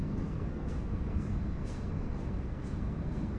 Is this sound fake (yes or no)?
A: yes